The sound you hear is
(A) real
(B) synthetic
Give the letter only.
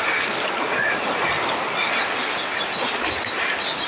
A